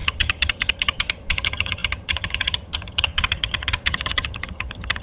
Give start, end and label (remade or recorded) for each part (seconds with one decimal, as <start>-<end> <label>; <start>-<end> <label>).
0.0-5.0 remade